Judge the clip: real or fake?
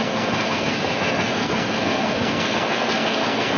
fake